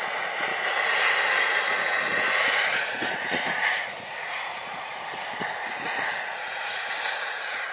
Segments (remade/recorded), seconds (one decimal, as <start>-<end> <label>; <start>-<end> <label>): 0.0-0.5 remade; 0.5-1.3 recorded; 1.3-7.7 remade